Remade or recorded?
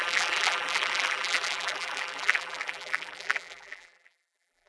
remade